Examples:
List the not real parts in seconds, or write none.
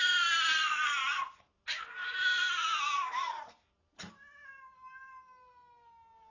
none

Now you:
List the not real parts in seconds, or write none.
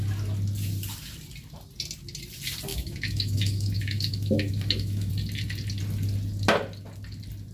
2.7-5.1 (autoencoder, DAC-VAE)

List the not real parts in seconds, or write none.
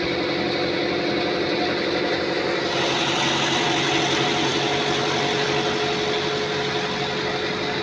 none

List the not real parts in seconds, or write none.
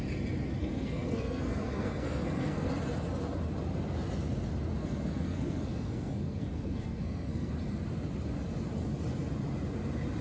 0.6-2.7 (codec, SNAC); 4.8-7.5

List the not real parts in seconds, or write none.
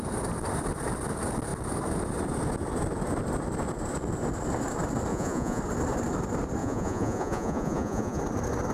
5.1-5.6 (vocoder, Vocos); 6.6-8.2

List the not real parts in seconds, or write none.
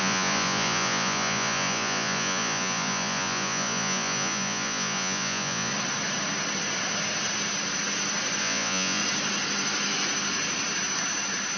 0.0-5.7 (vocoder, Vocos); 8.4-9.0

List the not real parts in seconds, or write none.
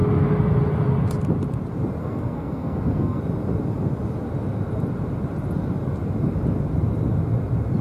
2.0-3.2 (codec, SNAC)